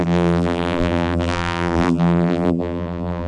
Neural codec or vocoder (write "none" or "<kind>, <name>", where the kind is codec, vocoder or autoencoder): vocoder, BigVGAN v2